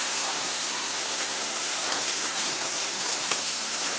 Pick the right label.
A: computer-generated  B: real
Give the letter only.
A